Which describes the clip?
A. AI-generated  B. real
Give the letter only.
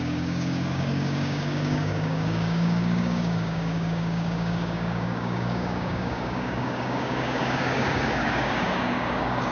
A